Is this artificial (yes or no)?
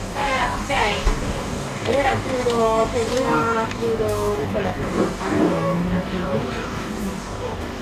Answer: yes